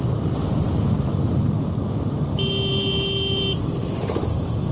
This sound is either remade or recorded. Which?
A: recorded